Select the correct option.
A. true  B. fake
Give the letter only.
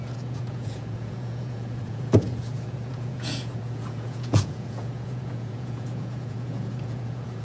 B